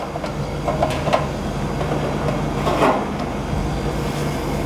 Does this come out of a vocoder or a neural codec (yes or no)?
no